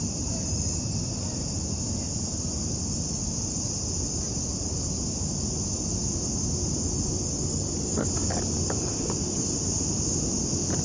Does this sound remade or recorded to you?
remade